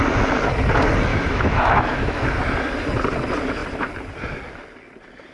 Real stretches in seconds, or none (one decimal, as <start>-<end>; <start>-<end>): 0.0-1.1; 2.4-5.3